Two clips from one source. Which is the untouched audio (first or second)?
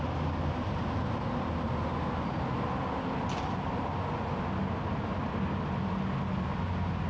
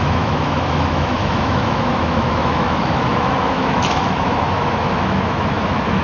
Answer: first